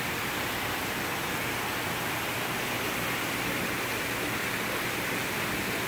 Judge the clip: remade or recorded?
recorded